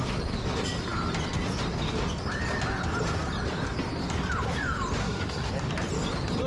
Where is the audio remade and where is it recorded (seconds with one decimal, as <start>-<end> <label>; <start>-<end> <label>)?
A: 0.0-5.0 recorded; 5.0-5.5 remade; 5.5-6.5 recorded